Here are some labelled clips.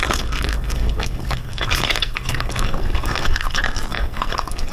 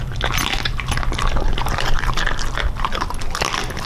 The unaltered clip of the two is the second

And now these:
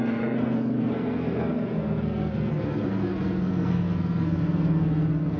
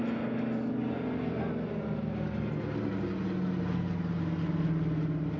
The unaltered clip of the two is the second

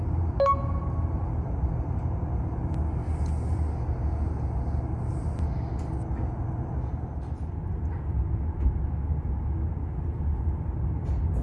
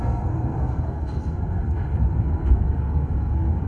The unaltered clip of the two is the first